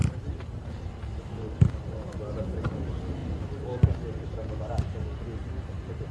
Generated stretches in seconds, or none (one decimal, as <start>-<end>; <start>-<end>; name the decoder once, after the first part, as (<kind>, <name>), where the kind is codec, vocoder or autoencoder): 0.0-0.7 (vocoder, BigVGAN v2); 5.4-6.1